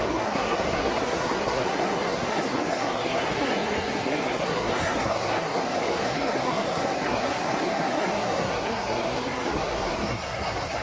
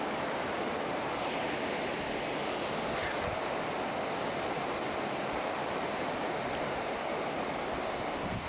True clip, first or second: second